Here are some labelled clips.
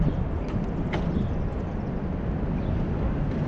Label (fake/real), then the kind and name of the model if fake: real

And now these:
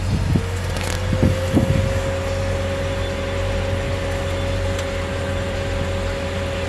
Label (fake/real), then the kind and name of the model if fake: real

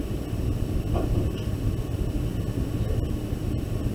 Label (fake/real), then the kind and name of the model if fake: real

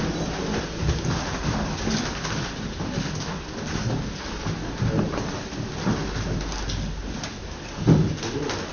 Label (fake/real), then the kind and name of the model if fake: real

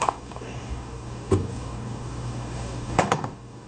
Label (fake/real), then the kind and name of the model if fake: fake, codec, DAC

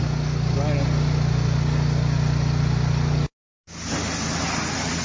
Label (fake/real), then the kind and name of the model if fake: real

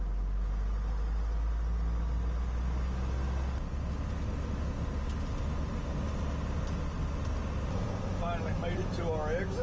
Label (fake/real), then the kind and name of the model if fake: real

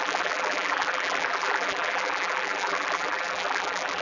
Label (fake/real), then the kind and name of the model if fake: fake, vocoder, BigVGAN v2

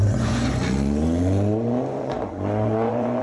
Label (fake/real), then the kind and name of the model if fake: fake, vocoder, Vocos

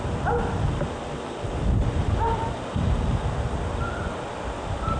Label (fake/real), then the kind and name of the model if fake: real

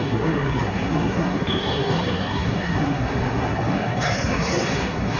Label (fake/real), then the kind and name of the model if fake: fake, codec, SNAC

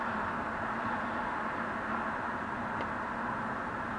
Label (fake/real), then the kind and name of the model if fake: real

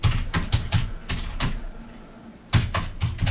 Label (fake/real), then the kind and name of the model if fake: real